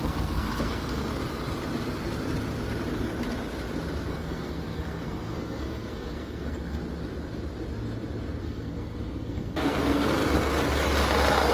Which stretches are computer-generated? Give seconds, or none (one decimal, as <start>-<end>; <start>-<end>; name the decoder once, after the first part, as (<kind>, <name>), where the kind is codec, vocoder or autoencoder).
0.0-1.1 (codec, SNAC); 4.1-6.8; 8.4-10.2